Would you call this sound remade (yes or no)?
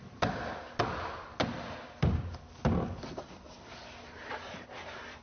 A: no